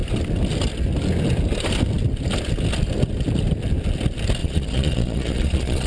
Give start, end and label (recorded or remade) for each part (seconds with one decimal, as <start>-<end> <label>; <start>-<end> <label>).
0.0-4.4 recorded; 4.4-5.9 remade